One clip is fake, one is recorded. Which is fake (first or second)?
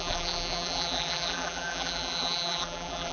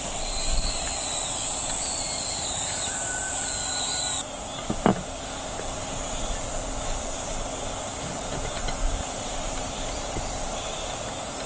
first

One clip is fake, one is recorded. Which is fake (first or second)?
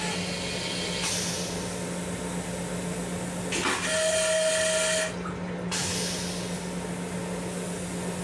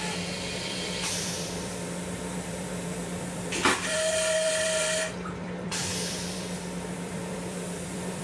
second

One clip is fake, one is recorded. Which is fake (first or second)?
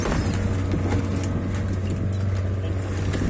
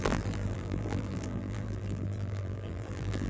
second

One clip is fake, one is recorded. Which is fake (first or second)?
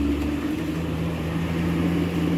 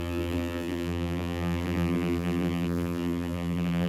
second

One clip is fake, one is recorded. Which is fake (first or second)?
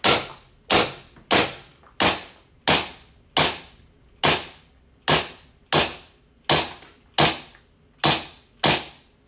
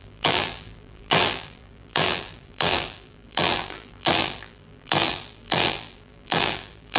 second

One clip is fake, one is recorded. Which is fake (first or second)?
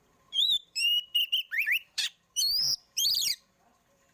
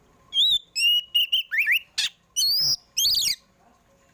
first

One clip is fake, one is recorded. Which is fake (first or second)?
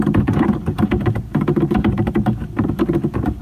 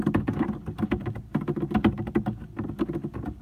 first